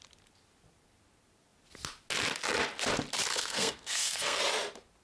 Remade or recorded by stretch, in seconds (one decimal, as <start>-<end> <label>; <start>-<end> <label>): 0.0-3.3 recorded; 3.3-4.4 remade; 4.4-5.0 recorded